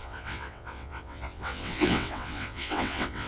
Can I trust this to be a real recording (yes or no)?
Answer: no